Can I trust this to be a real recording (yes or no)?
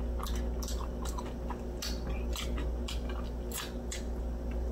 yes